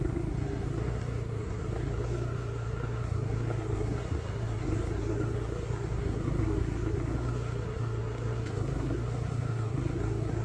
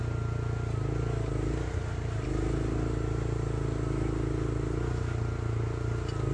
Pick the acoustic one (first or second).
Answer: second